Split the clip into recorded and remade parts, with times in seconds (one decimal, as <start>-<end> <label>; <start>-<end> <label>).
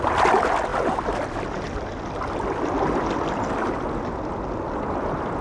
0.0-5.4 recorded